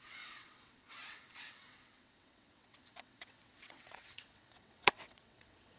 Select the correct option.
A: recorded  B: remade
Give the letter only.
B